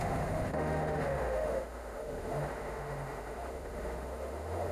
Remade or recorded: remade